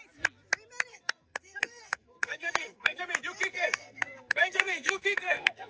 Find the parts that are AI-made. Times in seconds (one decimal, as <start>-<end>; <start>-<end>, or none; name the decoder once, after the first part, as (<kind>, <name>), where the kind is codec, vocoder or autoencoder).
0.9-3.0 (codec, SNAC); 3.5-5.7